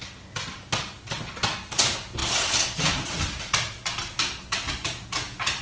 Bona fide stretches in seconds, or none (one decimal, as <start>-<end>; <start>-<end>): 0.0-5.6